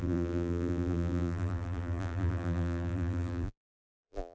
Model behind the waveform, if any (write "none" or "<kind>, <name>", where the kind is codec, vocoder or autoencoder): vocoder, BigVGAN v2